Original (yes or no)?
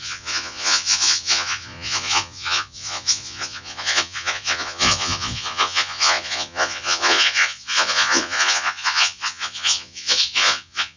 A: no